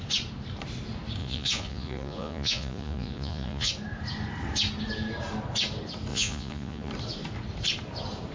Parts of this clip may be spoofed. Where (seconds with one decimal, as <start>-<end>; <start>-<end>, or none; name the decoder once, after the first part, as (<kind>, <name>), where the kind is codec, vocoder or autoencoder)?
1.2-3.7 (vocoder, Vocos); 6.1-6.9